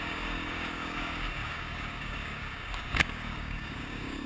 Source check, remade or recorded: remade